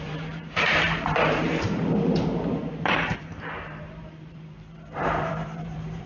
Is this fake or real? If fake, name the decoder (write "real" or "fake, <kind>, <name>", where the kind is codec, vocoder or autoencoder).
fake, vocoder, BigVGAN v2